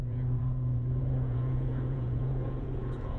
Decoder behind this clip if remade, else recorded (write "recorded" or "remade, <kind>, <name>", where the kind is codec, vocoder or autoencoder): remade, vocoder, Vocos